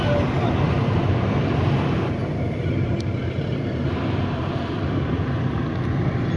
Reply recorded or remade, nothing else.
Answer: recorded